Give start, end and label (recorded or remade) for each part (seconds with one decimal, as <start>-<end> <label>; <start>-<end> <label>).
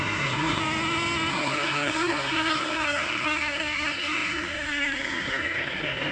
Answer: 0.0-0.6 remade; 0.6-1.3 recorded; 1.3-6.1 remade